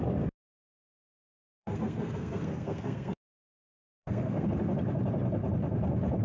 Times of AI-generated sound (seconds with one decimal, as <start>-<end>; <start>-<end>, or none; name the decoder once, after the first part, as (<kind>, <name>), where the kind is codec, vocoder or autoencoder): 0.8-4.5 (codec, SNAC)